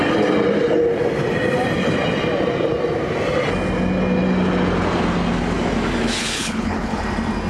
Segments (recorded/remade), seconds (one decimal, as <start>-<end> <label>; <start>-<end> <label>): 0.0-6.2 recorded; 6.2-7.0 remade; 7.0-7.5 recorded